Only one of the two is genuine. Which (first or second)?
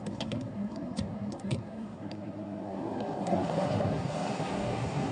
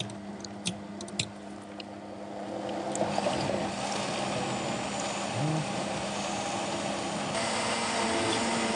second